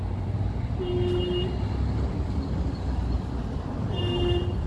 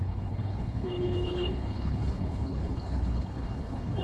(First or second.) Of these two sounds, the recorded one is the first